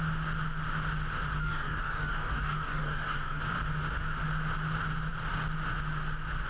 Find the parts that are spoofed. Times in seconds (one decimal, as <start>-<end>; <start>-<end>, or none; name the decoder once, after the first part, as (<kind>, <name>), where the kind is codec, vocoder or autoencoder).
1.4-3.4 (codec, DAC)